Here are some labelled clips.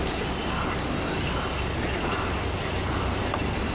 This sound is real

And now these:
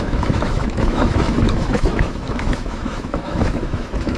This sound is fake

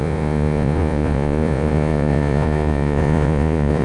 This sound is fake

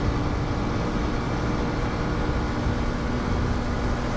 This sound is real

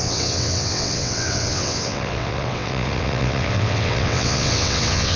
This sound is fake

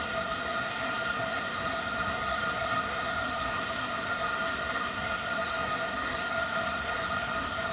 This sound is fake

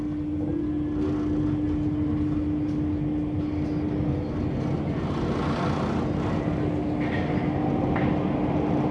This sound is real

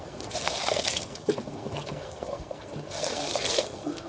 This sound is fake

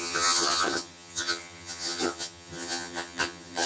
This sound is fake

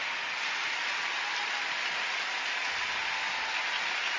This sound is real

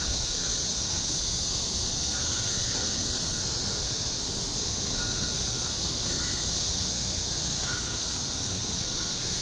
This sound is fake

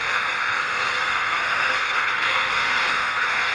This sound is fake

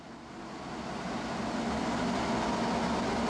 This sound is real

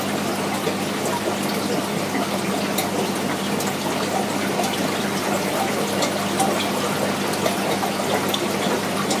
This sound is real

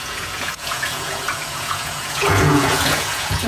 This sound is fake